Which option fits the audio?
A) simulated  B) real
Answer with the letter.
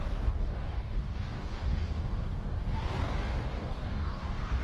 A